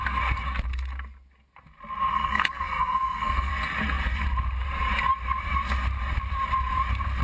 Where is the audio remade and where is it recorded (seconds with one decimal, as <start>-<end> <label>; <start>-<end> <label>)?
0.0-2.1 recorded; 2.1-3.5 remade; 3.5-7.2 recorded